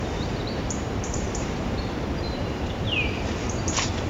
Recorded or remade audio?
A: remade